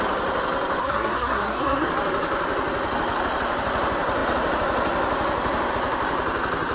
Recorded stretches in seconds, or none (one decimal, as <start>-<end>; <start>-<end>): 0.0-0.8; 1.9-6.7